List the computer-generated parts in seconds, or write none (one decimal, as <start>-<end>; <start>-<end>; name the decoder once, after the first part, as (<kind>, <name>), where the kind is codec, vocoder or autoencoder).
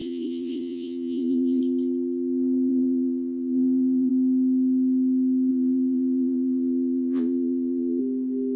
0.0-1.6 (vocoder, Vocos); 2.7-4.1; 5.5-8.0